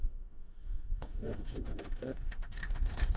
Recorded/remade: remade